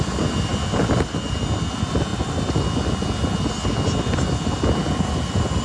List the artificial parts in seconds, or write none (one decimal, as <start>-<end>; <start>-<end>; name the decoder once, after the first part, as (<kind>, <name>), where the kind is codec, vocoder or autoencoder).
none